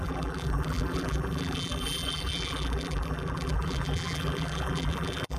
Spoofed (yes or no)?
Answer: yes